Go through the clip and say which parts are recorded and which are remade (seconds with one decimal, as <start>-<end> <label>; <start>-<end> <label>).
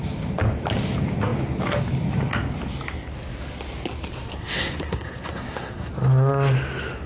0.0-4.3 recorded; 4.3-5.9 remade; 5.9-7.1 recorded